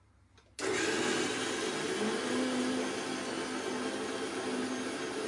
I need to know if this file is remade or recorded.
recorded